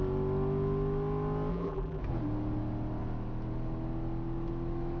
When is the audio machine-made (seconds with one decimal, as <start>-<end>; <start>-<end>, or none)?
1.5-2.0